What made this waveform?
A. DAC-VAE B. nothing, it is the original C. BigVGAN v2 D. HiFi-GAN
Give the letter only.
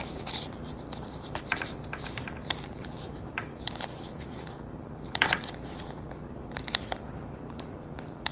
C